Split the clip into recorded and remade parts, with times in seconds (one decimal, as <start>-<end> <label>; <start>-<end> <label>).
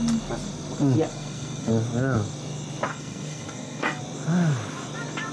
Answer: 0.0-1.1 recorded; 1.1-1.7 remade; 1.7-2.9 recorded; 2.9-4.0 remade; 4.0-5.3 recorded